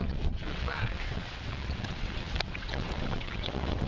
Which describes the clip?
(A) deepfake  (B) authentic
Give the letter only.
A